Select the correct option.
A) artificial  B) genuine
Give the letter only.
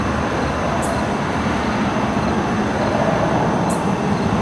A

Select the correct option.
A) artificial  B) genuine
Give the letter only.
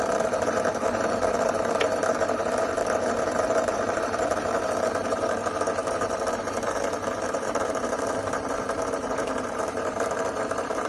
A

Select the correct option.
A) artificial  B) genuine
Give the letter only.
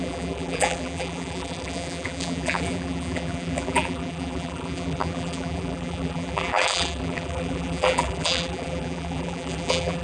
A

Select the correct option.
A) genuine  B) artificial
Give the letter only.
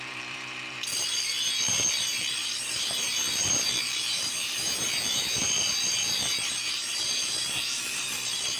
B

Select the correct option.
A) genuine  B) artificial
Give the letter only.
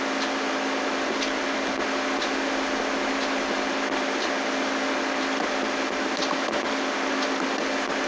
A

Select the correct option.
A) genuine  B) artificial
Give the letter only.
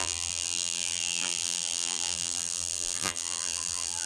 B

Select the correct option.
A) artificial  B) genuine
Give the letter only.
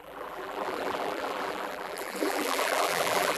A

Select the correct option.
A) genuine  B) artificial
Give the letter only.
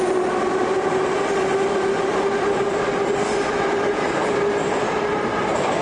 B